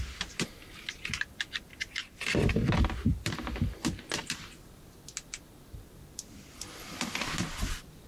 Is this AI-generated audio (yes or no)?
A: yes